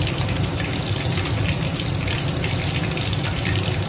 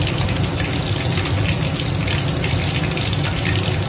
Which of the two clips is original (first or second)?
second